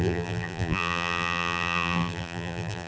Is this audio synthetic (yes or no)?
yes